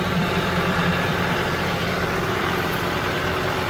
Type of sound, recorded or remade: remade